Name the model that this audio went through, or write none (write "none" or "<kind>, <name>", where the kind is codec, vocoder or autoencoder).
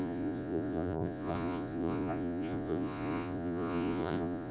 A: vocoder, Vocos